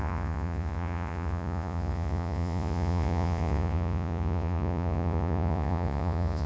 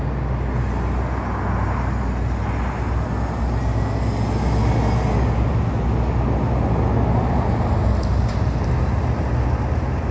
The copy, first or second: first